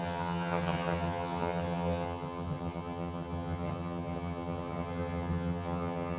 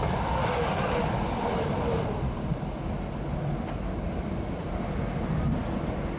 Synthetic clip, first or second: first